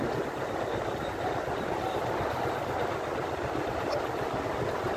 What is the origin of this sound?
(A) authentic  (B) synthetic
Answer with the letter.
A